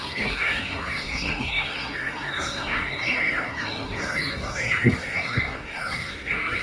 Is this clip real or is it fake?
fake